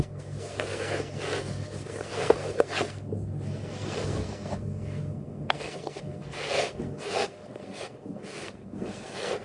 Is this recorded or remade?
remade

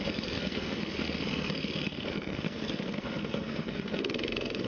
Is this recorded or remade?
remade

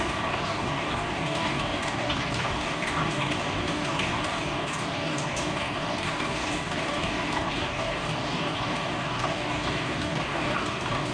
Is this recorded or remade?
remade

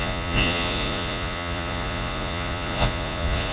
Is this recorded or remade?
remade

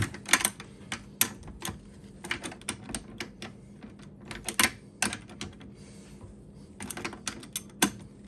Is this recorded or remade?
recorded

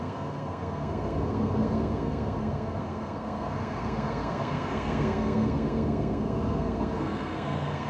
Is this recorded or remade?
remade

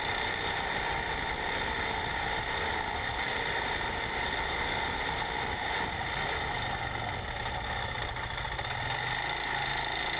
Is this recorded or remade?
recorded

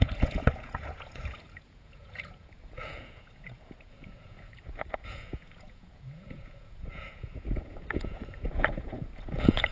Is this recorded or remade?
remade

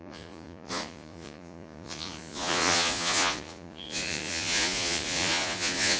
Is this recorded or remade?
remade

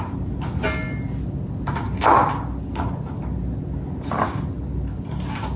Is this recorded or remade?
recorded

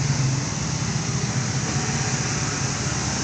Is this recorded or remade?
recorded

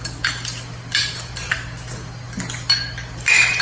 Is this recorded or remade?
recorded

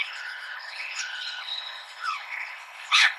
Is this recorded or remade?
remade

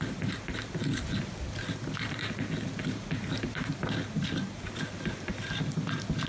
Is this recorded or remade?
recorded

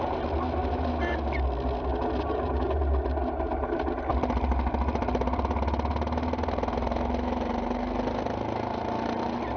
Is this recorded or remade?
recorded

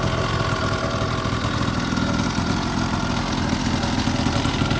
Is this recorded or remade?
recorded